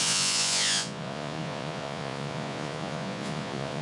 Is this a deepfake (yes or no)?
yes